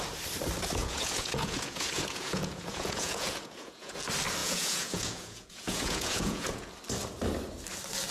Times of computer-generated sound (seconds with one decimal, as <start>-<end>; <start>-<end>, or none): 0.8-4.0; 4.4-6.7